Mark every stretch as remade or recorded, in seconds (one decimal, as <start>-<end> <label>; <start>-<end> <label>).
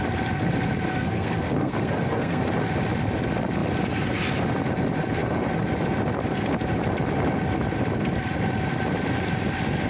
0.0-0.9 recorded; 0.9-2.4 remade; 2.4-9.9 recorded